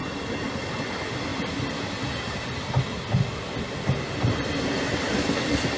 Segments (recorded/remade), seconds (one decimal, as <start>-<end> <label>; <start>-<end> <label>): 0.0-5.8 recorded